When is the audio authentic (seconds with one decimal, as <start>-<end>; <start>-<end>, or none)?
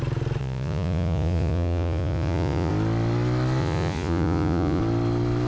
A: 0.0-0.4; 2.7-3.6; 4.8-5.5